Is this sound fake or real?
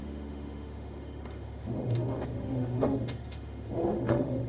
fake